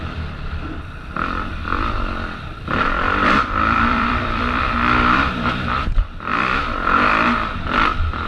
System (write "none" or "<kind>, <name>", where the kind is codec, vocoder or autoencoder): vocoder, BigVGAN v2